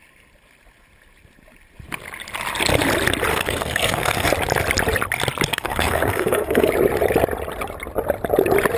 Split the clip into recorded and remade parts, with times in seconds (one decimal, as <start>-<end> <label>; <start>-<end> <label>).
0.0-3.3 recorded; 3.3-4.3 remade; 4.3-5.5 recorded; 5.5-6.7 remade; 6.7-8.8 recorded